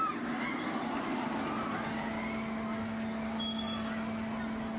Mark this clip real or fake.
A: real